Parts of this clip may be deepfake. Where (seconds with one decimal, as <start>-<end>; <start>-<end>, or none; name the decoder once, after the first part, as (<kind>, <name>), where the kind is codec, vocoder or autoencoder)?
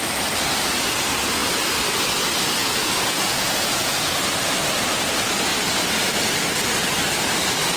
2.6-4.1 (vocoder, Vocos)